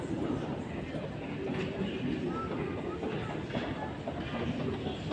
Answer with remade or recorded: recorded